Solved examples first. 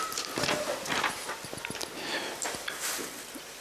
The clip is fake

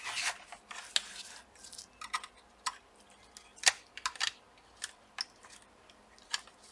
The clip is real